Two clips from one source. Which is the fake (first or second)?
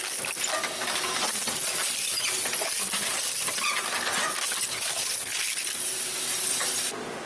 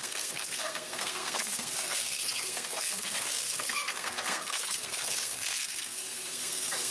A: second